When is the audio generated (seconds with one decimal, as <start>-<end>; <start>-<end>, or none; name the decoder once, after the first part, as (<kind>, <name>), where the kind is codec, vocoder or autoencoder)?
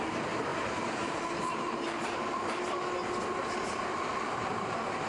0.5-2.7 (vocoder, BigVGAN v2); 4.1-5.1